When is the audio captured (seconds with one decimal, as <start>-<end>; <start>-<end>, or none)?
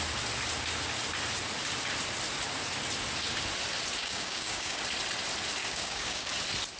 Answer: 0.0-4.0; 4.8-5.6; 6.3-6.8